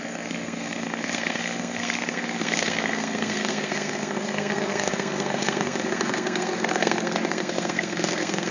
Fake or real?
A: fake